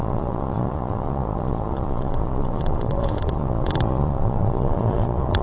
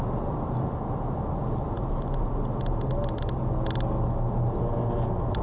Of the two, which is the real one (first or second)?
second